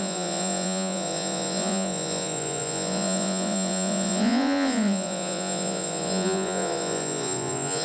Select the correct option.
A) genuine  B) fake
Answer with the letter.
B